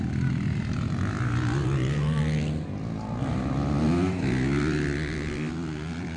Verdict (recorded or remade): recorded